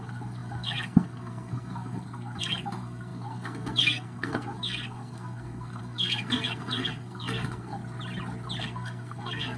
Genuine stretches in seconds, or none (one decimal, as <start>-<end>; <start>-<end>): 7.8-8.6